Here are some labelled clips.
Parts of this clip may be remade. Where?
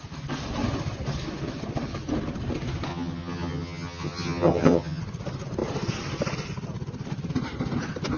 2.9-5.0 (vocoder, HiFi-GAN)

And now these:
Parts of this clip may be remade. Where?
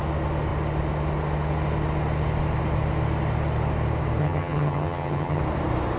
4.2-5.4 (vocoder, HiFi-GAN)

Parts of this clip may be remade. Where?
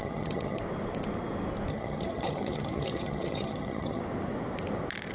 0.0-0.6 (vocoder, HiFi-GAN); 1.7-4.0